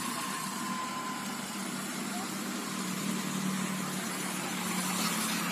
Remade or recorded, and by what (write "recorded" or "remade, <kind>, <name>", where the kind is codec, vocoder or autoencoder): recorded